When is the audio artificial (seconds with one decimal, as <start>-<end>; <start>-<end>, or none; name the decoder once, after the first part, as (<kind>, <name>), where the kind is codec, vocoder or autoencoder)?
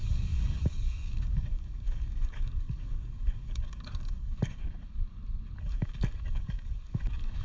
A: 0.0-4.6 (codec, DAC); 5.6-7.4